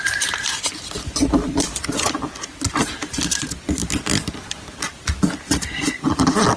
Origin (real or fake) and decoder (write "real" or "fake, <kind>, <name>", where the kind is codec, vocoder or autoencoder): real